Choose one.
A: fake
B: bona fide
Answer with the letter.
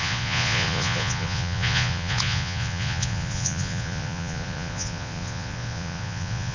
A